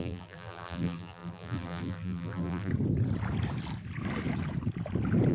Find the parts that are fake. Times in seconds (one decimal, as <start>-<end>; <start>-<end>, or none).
0.0-2.7